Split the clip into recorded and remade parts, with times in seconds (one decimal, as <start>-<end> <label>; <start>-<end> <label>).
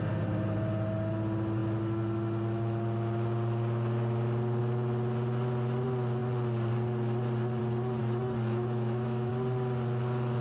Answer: 0.0-8.0 recorded; 8.0-9.3 remade; 9.3-10.4 recorded